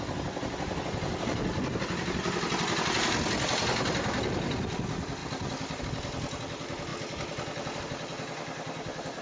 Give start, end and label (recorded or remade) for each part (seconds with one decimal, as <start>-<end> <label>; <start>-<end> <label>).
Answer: 0.0-9.2 recorded